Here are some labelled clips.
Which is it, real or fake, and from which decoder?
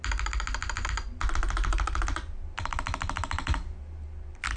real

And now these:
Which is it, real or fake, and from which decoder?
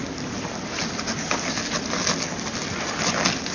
real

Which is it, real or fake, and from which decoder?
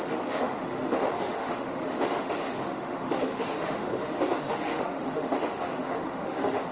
fake, autoencoder, DAC-VAE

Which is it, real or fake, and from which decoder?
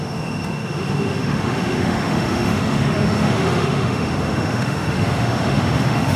fake, autoencoder, DAC-VAE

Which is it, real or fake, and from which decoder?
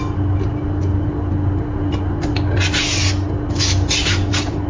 real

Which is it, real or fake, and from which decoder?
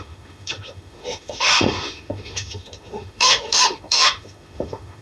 fake, autoencoder, DAC-VAE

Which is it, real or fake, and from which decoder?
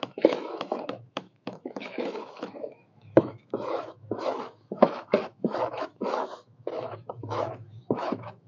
fake, autoencoder, DAC-VAE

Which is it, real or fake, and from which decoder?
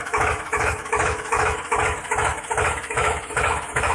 fake, autoencoder, DAC-VAE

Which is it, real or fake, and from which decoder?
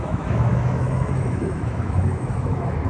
fake, autoencoder, DAC-VAE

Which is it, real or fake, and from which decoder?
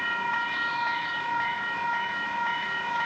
fake, autoencoder, DAC-VAE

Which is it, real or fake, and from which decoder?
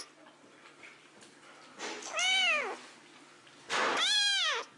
real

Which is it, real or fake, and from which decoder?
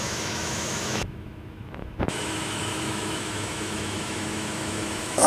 fake, autoencoder, DAC-VAE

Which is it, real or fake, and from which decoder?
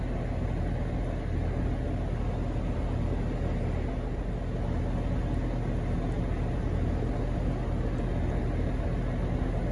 real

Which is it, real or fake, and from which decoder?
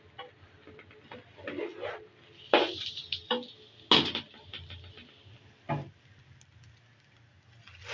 real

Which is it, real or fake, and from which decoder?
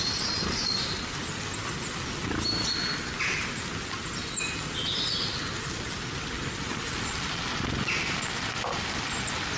real